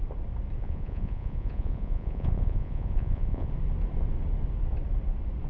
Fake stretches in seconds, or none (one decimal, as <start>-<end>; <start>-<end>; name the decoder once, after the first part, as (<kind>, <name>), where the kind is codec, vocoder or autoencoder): 0.6-3.5 (vocoder, Vocos)